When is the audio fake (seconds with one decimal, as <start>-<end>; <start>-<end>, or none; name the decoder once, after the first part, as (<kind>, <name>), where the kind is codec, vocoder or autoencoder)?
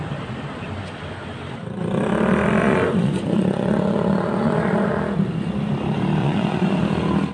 2.6-4.9 (vocoder, Vocos); 6.2-6.8